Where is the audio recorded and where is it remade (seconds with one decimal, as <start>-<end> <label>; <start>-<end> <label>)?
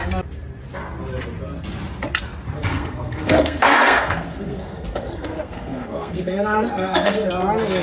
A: 0.0-2.6 recorded; 2.6-7.3 remade; 7.3-7.8 recorded